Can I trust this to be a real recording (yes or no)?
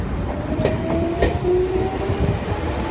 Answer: yes